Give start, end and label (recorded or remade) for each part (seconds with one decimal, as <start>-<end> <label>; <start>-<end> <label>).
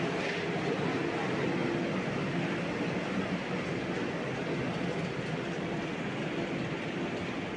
0.0-7.6 recorded